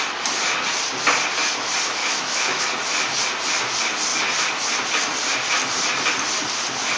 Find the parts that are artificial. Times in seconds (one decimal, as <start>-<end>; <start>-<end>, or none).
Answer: 2.0-2.6